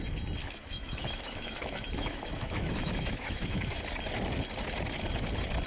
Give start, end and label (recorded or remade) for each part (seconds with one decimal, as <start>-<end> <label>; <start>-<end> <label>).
0.0-0.4 recorded; 0.4-3.8 remade; 3.8-5.7 recorded